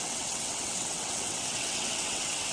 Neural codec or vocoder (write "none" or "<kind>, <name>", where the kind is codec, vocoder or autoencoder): vocoder, WaveNeXt